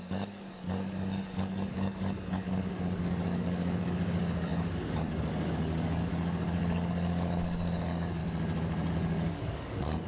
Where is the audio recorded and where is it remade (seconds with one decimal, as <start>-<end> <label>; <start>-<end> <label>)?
0.0-8.2 remade; 8.2-8.9 recorded; 8.9-10.1 remade